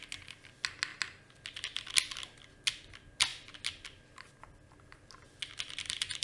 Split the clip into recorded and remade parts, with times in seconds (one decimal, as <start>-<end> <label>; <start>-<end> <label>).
0.0-6.2 recorded